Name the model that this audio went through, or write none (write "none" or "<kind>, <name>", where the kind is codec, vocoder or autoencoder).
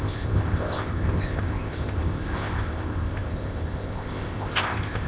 codec, ZipCodec